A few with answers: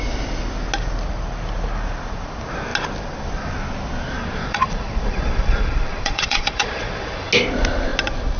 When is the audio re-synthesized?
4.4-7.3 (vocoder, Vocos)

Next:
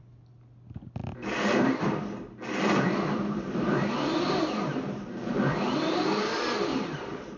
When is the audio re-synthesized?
none

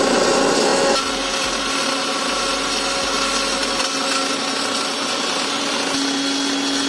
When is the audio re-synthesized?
none

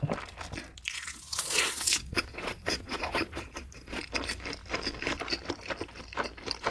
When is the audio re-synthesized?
0.9-4.0 (vocoder, Vocos)

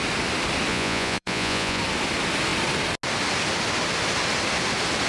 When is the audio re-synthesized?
0.7-1.8 (vocoder, Vocos)